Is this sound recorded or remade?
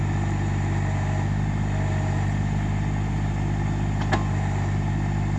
recorded